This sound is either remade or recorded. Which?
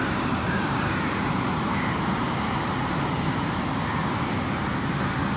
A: remade